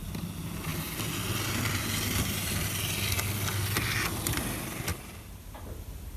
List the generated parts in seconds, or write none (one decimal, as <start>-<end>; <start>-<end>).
none